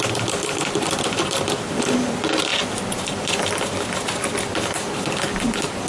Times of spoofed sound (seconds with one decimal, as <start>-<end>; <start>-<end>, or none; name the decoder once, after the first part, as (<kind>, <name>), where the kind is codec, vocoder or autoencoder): none